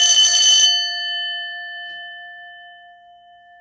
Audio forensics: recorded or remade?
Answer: recorded